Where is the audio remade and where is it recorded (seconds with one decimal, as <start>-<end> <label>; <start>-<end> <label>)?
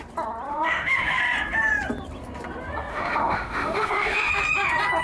0.0-0.5 recorded; 0.5-1.2 remade; 1.2-2.9 recorded; 2.9-4.3 remade; 4.3-5.0 recorded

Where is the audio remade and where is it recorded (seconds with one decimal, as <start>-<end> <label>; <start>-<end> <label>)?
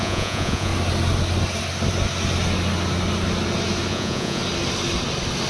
0.0-0.7 remade; 0.7-3.9 recorded; 3.9-4.4 remade; 4.4-5.5 recorded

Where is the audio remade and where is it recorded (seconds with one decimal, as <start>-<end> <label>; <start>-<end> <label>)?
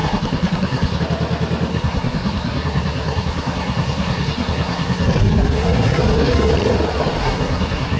0.0-1.0 remade; 1.0-1.7 recorded; 1.7-6.5 remade; 6.5-7.2 recorded; 7.2-8.0 remade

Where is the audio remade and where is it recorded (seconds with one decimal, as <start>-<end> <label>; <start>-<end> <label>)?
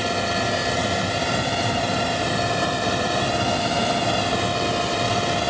0.0-0.8 recorded; 0.8-3.3 remade; 3.3-5.5 recorded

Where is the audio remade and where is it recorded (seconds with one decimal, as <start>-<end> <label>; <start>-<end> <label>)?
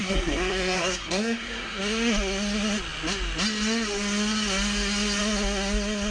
0.0-1.8 remade; 1.8-6.1 recorded